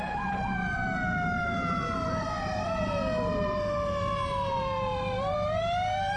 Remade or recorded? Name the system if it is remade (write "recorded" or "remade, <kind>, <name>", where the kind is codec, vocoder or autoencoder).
remade, vocoder, BigVGAN v2